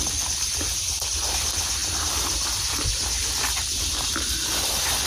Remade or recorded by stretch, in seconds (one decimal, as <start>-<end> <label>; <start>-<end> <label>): 0.0-5.1 remade